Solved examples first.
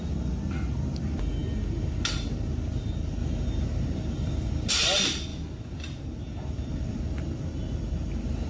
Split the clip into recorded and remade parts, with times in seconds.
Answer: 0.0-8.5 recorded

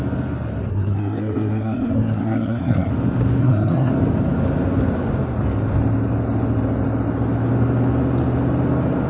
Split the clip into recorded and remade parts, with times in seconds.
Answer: 0.0-0.7 recorded; 0.7-2.9 remade; 2.9-3.4 recorded; 3.4-3.9 remade; 3.9-9.1 recorded

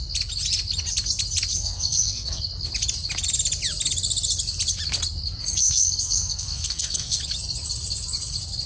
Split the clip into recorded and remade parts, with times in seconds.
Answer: 0.0-1.5 recorded; 1.5-2.4 remade; 2.4-5.4 recorded; 5.4-7.2 remade; 7.2-8.7 recorded

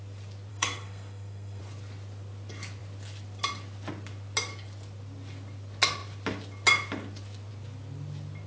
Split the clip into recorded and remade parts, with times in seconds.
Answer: 0.0-0.5 recorded; 0.5-1.6 remade; 1.6-8.5 recorded

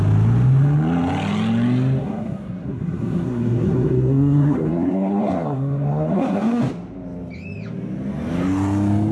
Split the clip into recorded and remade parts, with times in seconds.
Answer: 0.0-2.0 recorded; 2.0-6.7 remade; 6.7-9.1 recorded